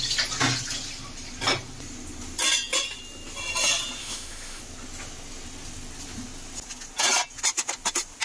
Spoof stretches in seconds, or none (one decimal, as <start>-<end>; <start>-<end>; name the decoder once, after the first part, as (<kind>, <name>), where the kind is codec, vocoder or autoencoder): 4.0-4.6 (autoencoder, DAC-VAE)